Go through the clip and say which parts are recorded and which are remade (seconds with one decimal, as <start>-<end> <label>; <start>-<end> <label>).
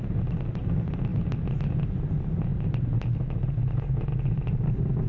0.0-5.1 recorded